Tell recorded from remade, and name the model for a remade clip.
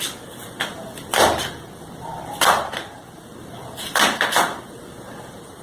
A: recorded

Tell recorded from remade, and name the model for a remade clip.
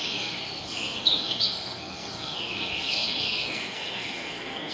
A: remade, codec, SNAC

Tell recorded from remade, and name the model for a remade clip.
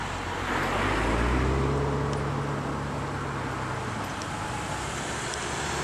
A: recorded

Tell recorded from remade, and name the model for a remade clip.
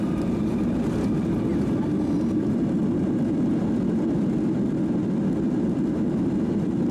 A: recorded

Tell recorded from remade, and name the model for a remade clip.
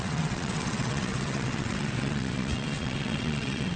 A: remade, vocoder, WaveNeXt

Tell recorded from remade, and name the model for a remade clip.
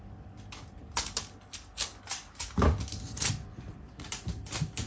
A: recorded